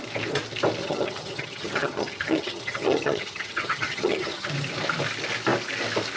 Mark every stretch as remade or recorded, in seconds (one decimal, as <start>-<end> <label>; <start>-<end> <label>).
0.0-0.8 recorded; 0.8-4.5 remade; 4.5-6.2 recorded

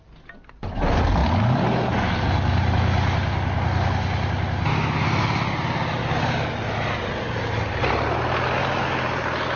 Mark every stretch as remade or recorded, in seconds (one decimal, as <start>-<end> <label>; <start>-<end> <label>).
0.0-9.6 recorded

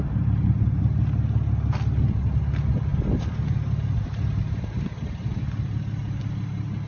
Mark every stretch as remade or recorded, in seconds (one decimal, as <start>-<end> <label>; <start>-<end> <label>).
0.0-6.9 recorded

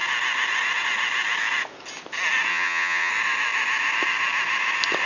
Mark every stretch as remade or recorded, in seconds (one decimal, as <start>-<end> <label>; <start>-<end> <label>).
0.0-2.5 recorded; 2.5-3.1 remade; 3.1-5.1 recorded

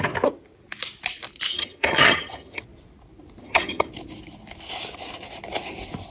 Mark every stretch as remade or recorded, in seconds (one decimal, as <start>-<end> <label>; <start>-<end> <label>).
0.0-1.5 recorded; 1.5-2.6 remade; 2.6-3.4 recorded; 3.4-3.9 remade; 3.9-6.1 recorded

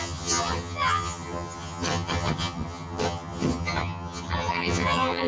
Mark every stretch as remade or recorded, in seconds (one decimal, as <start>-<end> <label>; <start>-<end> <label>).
0.0-5.3 remade

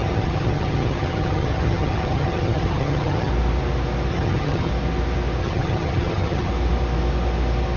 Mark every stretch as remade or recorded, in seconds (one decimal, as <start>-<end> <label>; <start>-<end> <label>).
0.0-3.3 remade; 3.3-4.1 recorded; 4.1-4.7 remade; 4.7-5.4 recorded; 5.4-6.5 remade; 6.5-7.8 recorded